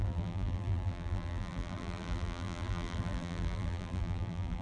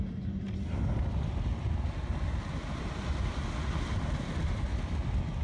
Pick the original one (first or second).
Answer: second